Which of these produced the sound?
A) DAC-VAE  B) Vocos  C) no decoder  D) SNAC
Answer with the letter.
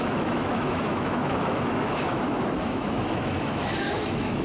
A